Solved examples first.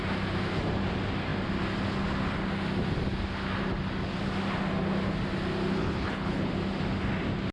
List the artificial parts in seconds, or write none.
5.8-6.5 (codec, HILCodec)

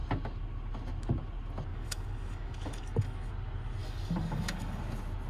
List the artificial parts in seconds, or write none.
1.7-3.3 (codec, DAC); 3.8-4.8

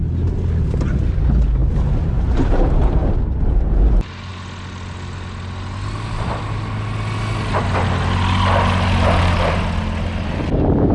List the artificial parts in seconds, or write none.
none